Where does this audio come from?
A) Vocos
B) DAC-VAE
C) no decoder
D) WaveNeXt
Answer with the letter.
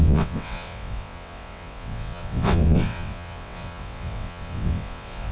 D